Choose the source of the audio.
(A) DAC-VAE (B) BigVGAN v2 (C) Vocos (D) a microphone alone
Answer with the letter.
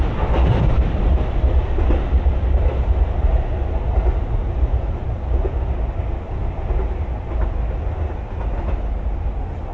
D